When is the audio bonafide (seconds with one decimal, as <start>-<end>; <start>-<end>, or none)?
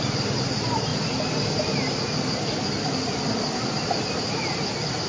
0.0-5.1